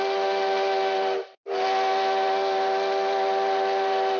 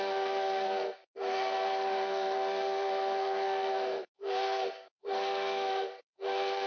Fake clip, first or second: second